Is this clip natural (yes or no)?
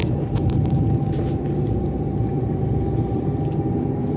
no